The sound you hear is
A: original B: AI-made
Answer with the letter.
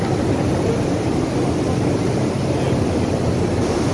A